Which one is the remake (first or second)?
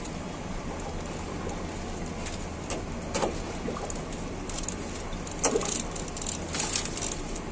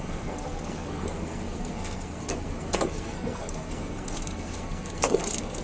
second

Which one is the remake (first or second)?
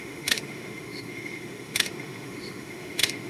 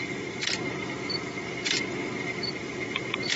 first